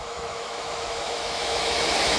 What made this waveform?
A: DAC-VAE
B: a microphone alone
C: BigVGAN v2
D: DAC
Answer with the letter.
A